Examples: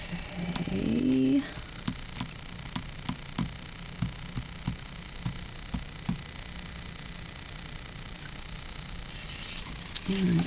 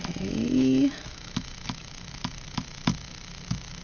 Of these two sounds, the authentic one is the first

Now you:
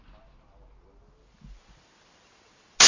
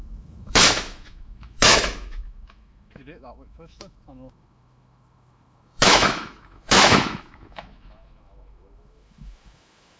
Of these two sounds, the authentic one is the first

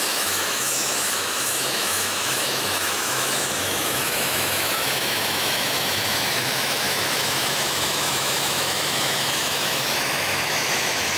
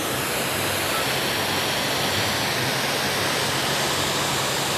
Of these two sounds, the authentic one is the second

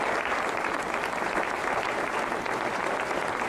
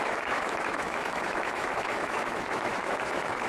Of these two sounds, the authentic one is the first